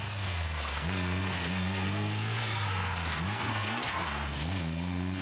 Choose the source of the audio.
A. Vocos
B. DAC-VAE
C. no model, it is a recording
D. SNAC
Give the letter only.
D